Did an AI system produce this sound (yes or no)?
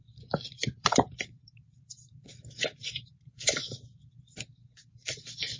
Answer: yes